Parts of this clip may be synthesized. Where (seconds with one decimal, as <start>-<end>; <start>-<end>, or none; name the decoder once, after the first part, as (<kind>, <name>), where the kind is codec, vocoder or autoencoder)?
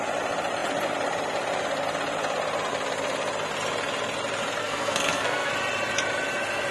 4.6-5.5 (codec, SNAC)